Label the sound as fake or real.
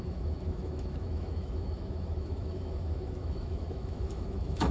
fake